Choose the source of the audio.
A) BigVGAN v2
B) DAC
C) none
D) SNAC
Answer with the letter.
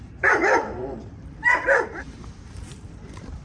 A